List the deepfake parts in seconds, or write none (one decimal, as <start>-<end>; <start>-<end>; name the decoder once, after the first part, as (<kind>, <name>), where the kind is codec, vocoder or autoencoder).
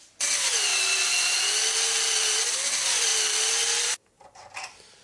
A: 0.0-0.7 (vocoder, BigVGAN v2); 2.2-3.1; 4.5-5.0